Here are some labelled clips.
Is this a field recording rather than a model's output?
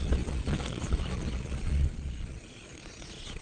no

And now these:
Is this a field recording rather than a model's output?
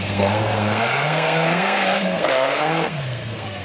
no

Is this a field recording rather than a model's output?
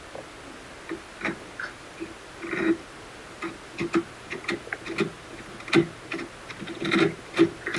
yes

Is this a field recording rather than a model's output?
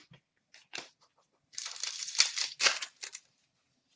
yes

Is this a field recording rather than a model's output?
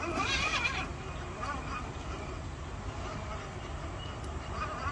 yes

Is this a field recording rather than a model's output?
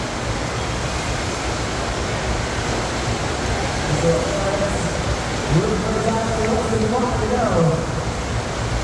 yes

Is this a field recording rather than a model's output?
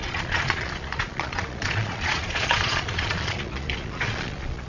no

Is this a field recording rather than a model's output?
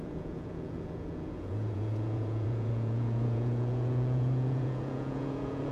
no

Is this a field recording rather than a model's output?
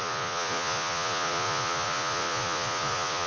no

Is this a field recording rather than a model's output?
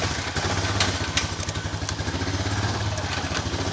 yes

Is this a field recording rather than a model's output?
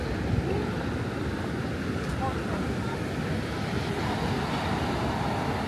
yes